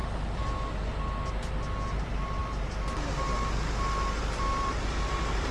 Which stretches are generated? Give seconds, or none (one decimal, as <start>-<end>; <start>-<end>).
2.0-2.4; 4.2-5.5

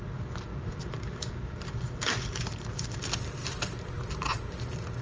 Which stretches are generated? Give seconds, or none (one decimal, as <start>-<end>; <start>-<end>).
0.5-3.0; 3.4-4.5

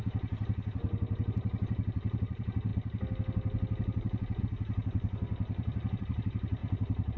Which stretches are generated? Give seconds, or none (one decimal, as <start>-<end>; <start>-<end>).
0.0-2.7; 4.4-7.2

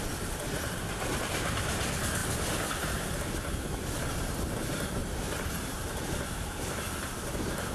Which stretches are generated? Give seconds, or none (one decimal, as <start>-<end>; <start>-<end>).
5.0-6.8